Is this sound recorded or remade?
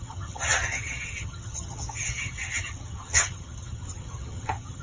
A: remade